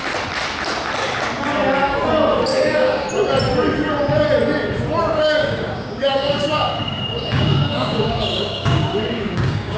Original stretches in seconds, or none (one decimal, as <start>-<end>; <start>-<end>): 0.0-2.5; 3.1-5.0